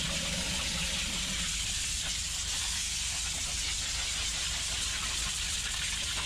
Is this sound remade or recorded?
recorded